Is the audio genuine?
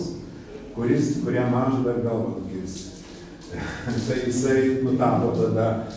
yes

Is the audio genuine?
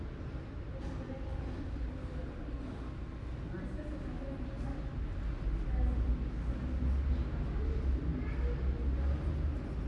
yes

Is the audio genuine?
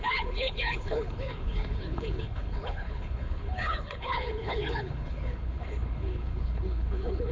no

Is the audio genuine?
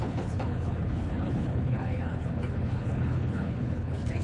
no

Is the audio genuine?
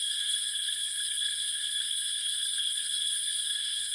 no